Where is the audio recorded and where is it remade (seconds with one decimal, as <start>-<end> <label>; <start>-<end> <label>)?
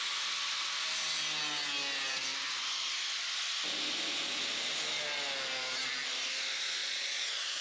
0.0-6.8 recorded; 6.8-7.6 remade